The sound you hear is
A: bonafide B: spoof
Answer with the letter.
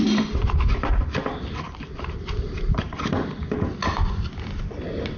A